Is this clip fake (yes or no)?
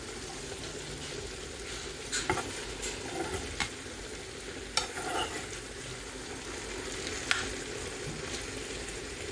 no